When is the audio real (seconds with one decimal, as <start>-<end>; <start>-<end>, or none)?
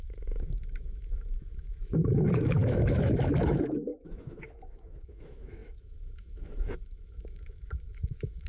none